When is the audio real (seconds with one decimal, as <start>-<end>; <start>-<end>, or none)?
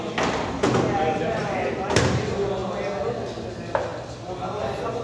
0.0-1.4; 2.0-5.0